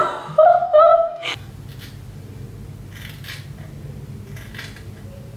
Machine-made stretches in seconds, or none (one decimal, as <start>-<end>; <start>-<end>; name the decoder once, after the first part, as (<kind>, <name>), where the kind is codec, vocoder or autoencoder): 0.6-1.5 (codec, SNAC)